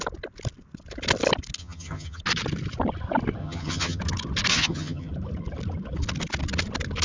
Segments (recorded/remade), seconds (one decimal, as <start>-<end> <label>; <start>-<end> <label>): 0.0-1.6 recorded; 1.6-2.2 remade; 2.2-3.4 recorded; 3.4-4.0 remade; 4.0-4.5 recorded; 4.5-5.1 remade; 5.1-7.0 recorded